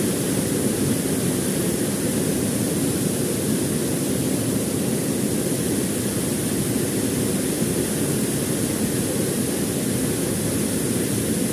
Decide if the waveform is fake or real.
real